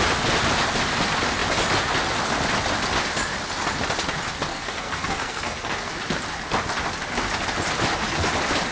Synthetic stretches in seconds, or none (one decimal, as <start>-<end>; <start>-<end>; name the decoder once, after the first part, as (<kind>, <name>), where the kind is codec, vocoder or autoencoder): 4.5-5.9 (codec, SNAC)